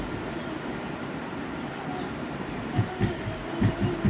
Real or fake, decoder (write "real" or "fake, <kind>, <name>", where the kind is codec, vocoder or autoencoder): real